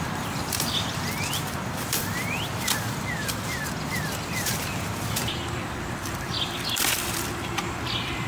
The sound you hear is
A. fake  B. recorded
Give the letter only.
A